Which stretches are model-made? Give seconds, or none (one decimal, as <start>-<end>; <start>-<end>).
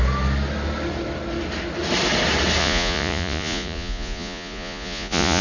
2.6-5.4